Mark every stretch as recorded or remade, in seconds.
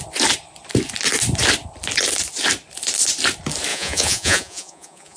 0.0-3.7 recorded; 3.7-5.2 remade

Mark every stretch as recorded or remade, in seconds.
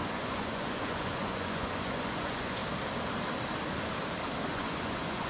0.0-2.6 remade; 2.6-4.5 recorded; 4.5-5.3 remade